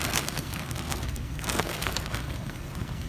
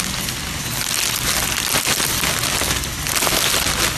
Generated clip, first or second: first